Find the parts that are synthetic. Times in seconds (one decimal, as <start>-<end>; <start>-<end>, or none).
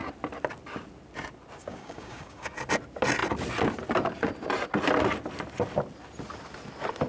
1.6-2.5